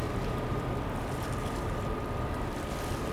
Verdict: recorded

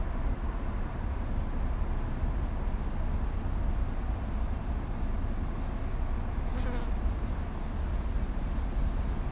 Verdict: recorded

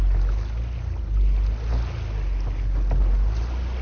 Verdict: recorded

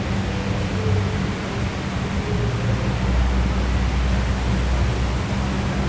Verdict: recorded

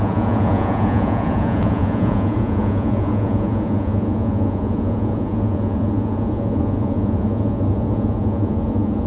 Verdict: remade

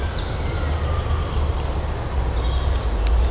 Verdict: recorded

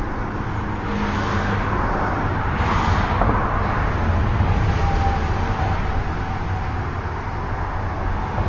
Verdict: recorded